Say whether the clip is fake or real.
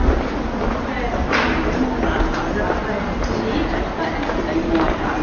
real